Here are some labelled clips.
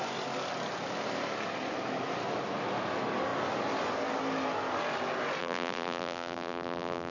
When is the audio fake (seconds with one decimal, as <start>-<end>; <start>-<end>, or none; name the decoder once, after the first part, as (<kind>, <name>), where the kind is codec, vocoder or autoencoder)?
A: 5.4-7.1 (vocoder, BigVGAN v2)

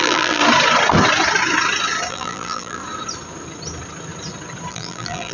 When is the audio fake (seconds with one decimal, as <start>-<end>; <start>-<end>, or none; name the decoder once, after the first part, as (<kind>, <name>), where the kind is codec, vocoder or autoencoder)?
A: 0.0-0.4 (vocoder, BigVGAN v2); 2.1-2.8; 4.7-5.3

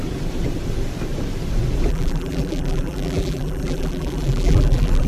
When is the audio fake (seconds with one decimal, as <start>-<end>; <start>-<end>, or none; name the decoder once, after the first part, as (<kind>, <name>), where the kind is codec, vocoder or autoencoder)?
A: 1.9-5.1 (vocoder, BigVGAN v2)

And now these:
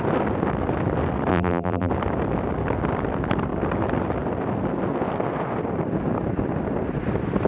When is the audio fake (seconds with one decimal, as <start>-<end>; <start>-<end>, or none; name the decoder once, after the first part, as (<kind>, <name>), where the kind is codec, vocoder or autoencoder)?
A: 1.3-1.9 (vocoder, BigVGAN v2)

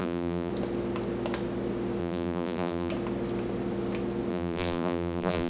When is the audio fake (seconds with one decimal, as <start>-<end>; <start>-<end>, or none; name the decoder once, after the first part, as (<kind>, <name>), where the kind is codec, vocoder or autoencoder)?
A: 0.0-0.5 (vocoder, BigVGAN v2); 2.0-2.9; 4.3-5.5

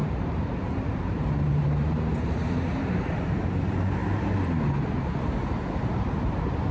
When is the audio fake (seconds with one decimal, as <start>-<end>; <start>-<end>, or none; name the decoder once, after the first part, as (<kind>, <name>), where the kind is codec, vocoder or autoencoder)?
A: 0.0-4.0 (vocoder, BigVGAN v2); 4.8-6.7

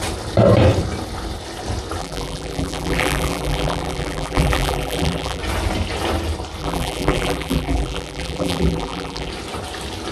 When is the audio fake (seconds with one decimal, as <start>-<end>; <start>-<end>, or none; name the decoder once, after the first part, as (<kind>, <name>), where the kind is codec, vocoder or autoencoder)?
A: 2.0-5.4 (vocoder, BigVGAN v2); 6.6-9.3

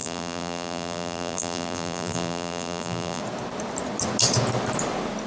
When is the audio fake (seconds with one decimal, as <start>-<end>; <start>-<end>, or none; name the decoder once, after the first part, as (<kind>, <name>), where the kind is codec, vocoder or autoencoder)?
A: 0.0-3.2 (vocoder, BigVGAN v2)